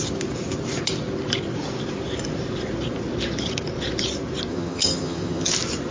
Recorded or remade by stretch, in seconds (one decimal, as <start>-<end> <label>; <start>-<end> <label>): 0.0-4.5 recorded; 4.5-5.5 remade; 5.5-5.9 recorded